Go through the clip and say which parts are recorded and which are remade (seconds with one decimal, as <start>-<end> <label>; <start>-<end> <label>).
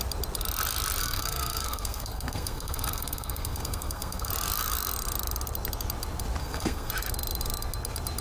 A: 0.0-1.0 recorded; 1.0-4.3 remade; 4.3-6.4 recorded; 6.4-6.9 remade; 6.9-8.2 recorded